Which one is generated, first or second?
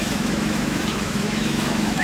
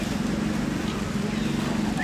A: first